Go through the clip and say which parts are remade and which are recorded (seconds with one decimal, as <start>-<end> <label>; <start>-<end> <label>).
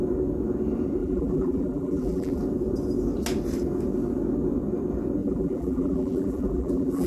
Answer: 0.0-1.0 recorded; 1.0-2.4 remade; 2.4-5.2 recorded; 5.2-7.1 remade